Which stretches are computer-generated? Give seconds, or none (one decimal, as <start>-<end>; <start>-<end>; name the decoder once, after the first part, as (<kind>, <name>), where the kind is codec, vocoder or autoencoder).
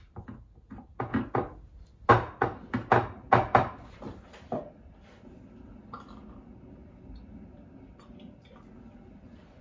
none